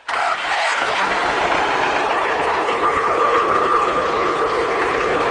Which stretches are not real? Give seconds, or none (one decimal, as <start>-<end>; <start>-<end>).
0.5-1.1; 2.0-5.3